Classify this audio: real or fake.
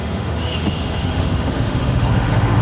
fake